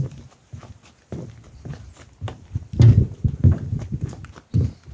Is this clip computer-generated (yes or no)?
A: no